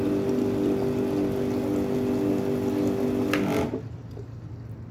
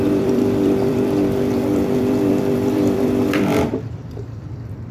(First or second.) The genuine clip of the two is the first